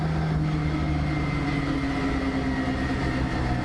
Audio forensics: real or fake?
real